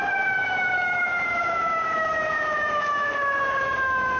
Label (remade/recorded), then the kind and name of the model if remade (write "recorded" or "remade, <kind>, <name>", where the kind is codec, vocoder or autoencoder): remade, autoencoder, DAC-VAE